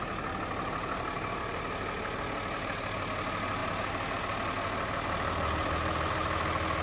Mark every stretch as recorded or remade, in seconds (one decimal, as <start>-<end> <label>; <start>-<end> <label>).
0.0-6.8 recorded